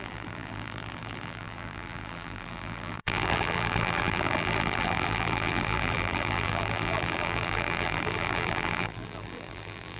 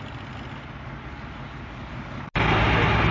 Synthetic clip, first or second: first